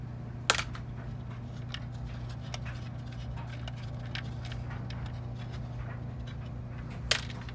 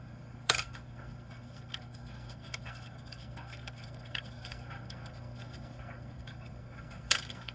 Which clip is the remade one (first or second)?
second